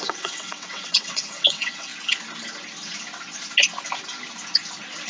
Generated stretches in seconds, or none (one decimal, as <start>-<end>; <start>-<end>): 0.0-1.9